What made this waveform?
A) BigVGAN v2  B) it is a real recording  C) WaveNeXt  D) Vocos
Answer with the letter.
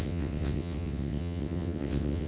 C